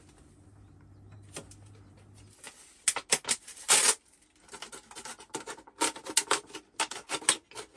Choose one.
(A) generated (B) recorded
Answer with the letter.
B